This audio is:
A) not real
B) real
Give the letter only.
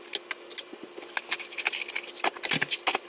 B